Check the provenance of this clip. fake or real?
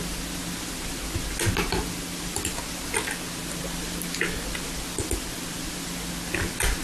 real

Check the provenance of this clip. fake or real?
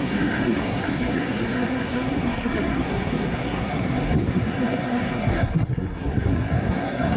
fake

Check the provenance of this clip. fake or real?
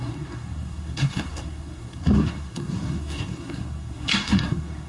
fake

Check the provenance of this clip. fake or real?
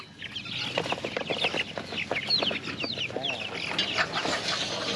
real